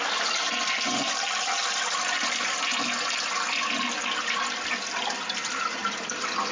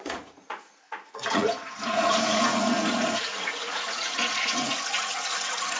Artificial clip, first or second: second